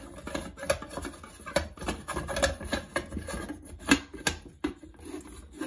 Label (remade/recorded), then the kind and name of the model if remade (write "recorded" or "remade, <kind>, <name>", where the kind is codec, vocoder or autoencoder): recorded